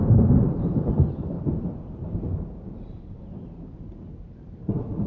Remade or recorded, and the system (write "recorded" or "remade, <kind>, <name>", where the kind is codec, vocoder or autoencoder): remade, vocoder, BigVGAN v2